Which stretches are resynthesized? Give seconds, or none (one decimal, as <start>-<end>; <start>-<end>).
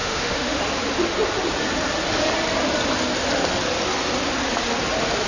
0.0-0.6